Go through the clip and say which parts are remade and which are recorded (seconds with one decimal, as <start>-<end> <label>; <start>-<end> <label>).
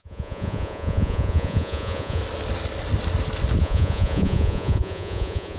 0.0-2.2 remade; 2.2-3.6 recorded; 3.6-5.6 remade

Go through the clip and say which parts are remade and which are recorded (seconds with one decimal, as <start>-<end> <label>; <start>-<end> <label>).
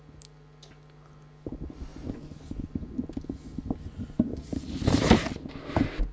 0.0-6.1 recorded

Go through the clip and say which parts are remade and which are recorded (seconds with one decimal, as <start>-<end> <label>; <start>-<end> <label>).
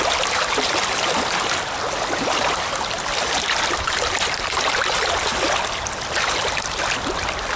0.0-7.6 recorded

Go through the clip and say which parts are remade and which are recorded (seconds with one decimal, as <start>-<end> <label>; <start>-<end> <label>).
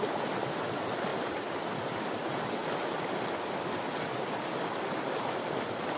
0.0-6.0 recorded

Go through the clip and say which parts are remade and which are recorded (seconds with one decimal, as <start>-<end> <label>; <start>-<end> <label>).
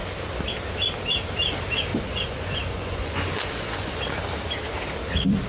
0.0-1.9 recorded; 1.9-4.0 remade; 4.0-5.5 recorded